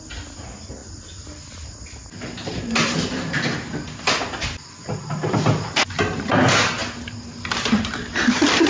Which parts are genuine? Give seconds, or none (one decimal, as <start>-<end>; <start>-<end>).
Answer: 0.0-8.7